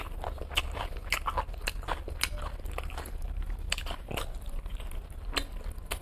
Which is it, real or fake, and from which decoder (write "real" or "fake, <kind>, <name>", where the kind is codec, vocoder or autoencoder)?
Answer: real